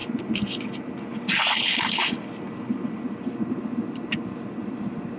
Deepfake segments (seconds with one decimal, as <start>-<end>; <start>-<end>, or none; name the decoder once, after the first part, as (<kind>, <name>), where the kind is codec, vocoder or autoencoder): none